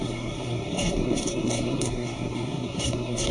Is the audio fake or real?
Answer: fake